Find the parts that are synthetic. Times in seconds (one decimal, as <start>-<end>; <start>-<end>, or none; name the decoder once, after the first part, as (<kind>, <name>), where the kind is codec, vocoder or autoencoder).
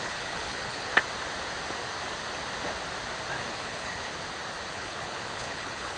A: 0.0-0.9 (codec, HILCodec); 3.5-4.1; 4.7-6.0